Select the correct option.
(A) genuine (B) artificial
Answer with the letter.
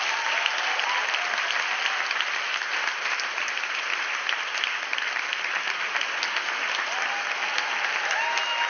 A